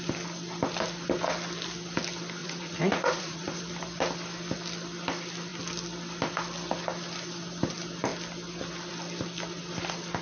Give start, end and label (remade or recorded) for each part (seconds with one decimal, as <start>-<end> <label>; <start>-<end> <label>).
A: 0.0-2.4 recorded; 2.4-3.6 remade; 3.6-10.2 recorded